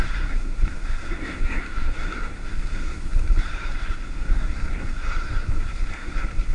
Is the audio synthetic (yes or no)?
yes